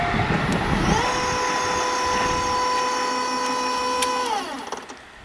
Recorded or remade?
recorded